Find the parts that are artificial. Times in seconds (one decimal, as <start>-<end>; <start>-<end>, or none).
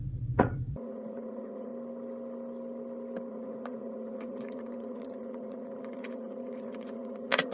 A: 0.0-1.7; 3.3-7.5